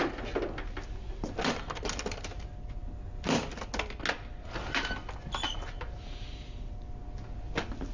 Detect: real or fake real